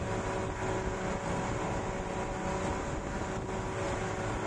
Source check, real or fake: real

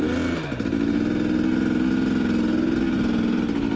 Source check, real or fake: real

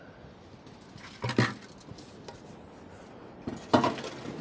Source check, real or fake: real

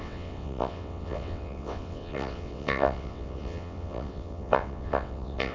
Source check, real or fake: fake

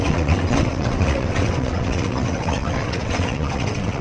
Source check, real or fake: fake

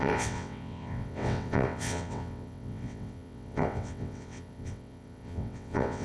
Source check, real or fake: fake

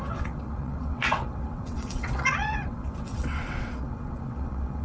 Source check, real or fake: fake